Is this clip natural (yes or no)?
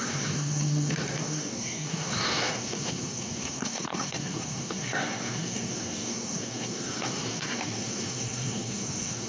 no